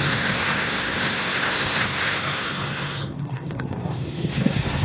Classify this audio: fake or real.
fake